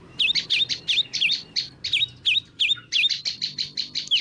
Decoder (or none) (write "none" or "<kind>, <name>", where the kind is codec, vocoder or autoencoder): none